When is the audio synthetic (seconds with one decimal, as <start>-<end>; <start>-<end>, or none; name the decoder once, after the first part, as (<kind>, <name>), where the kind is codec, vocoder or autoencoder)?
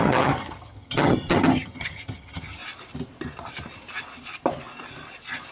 0.0-2.6 (vocoder, HiFi-GAN)